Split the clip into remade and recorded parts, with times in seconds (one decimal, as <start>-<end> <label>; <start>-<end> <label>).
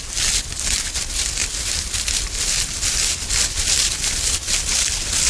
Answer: 0.0-5.3 recorded